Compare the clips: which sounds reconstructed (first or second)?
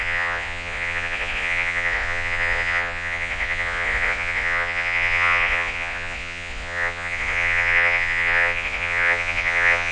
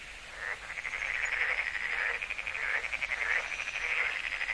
first